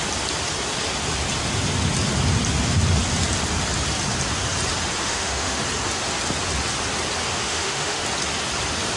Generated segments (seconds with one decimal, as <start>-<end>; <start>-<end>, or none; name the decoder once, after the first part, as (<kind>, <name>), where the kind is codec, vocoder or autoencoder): 5.0-5.6 (autoencoder, DAC-VAE); 7.3-8.0